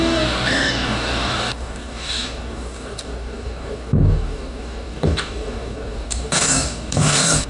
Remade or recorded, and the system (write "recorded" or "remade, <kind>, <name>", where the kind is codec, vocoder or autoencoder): remade, codec, DAC